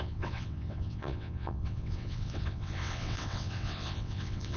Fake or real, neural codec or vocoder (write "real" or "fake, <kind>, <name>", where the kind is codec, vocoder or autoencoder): fake, vocoder, WaveNeXt